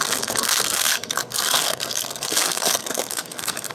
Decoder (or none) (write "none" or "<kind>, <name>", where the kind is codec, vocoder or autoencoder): codec, SNAC